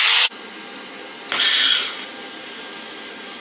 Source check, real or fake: real